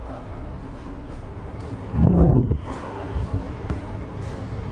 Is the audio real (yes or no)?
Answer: no